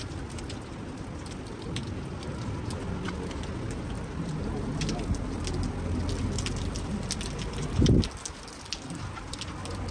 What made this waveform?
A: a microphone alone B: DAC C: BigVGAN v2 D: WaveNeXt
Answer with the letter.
A